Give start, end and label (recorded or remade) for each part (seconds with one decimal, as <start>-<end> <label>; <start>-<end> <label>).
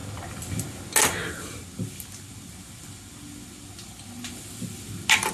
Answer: 0.0-5.3 recorded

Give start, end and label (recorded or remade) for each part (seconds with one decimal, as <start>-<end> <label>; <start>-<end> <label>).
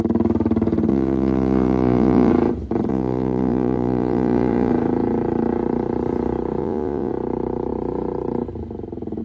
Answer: 0.0-0.9 recorded; 0.9-2.3 remade; 2.3-2.9 recorded; 2.9-4.7 remade; 4.7-6.6 recorded; 6.6-7.1 remade; 7.1-9.2 recorded